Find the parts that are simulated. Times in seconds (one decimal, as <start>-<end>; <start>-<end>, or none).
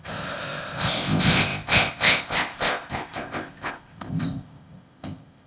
0.0-5.5